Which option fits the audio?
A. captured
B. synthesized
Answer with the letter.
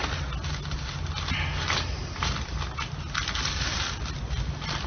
A